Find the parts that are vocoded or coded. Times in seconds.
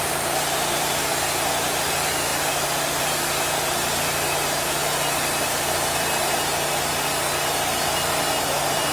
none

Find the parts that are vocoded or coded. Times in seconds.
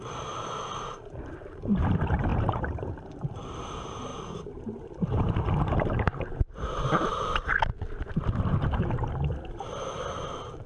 0.0-7.5 (vocoder, BigVGAN v2); 10.1-10.7